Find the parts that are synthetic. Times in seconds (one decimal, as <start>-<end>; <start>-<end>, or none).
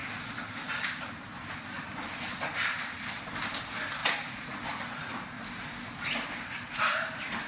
none